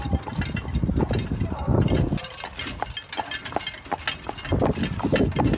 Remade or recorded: recorded